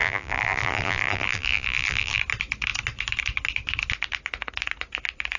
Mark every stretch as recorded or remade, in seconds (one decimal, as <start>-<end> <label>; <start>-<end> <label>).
0.0-2.2 remade; 2.2-5.4 recorded